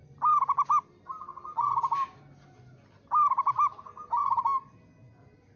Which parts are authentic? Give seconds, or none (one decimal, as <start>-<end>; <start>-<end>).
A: 0.0-5.6